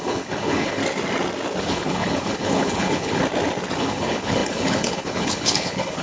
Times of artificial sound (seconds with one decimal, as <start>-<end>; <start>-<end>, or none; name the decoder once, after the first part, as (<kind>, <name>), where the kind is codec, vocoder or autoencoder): 0.0-0.8 (codec, HILCodec); 1.6-3.2; 3.8-6.0